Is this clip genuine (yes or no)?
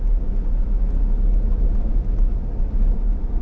yes